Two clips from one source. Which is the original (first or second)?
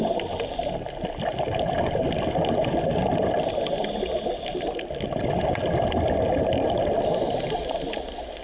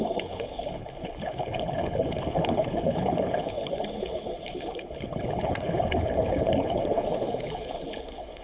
first